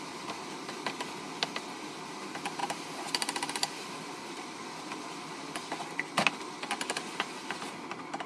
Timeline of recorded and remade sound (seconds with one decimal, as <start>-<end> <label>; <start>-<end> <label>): 0.0-8.3 recorded

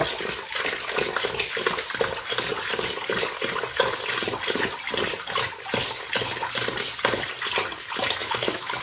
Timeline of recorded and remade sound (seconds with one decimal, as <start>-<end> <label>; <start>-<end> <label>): 0.0-8.2 recorded; 8.2-8.8 remade

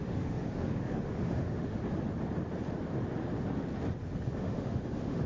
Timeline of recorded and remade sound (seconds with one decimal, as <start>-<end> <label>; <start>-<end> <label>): 0.0-1.8 remade; 1.8-4.4 recorded; 4.4-5.3 remade

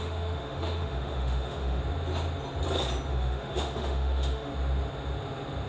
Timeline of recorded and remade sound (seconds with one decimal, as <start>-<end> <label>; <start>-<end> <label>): 0.0-1.8 remade; 1.8-3.1 recorded; 3.1-4.5 remade; 4.5-5.7 recorded